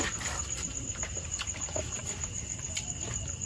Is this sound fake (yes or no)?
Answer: yes